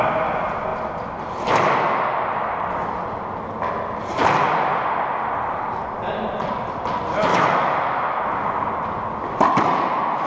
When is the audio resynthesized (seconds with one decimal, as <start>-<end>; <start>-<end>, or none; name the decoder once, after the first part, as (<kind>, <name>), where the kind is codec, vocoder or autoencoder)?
7.3-8.2 (autoencoder, DAC-VAE)